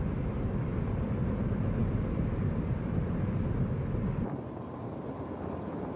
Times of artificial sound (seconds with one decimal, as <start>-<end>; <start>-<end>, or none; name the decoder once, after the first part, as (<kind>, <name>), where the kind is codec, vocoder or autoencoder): none